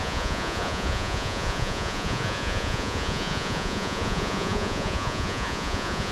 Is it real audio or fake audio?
fake